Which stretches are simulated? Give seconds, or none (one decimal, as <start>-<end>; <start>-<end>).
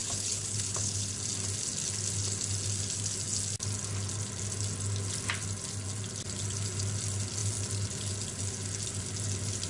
0.0-1.1